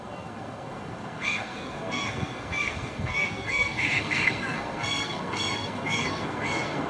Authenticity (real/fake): fake